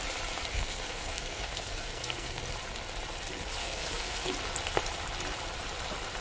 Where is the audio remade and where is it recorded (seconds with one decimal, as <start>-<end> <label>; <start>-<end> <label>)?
0.0-0.5 recorded; 0.5-2.4 remade; 2.4-3.6 recorded; 3.6-4.3 remade; 4.3-6.2 recorded